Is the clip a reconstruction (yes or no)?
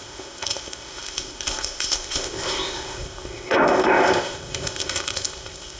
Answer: yes